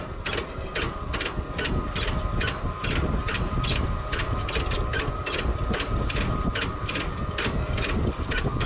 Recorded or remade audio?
recorded